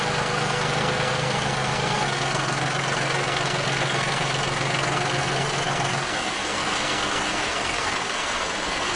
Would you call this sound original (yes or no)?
no